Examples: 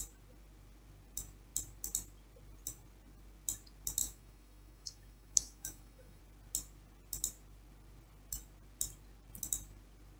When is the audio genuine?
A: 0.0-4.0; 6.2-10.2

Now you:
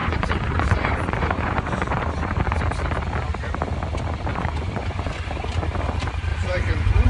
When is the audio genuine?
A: 2.6-4.3; 5.3-6.3